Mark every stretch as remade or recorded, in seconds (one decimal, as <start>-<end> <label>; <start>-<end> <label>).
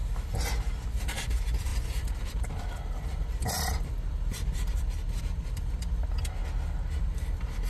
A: 0.0-0.9 recorded; 0.9-6.4 remade; 6.4-7.0 recorded; 7.0-7.7 remade